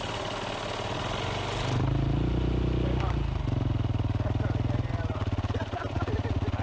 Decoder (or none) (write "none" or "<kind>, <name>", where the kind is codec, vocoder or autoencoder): none